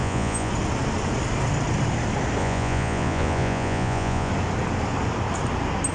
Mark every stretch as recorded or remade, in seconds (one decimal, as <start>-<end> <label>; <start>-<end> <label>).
0.0-0.5 remade; 0.5-2.4 recorded; 2.4-4.3 remade; 4.3-5.9 recorded